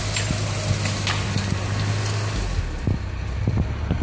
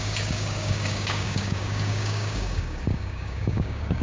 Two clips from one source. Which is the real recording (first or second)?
first